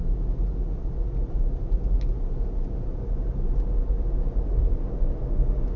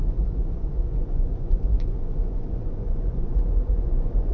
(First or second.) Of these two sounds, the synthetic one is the second